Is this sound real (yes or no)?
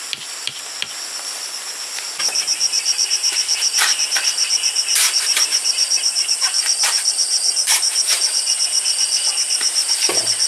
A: no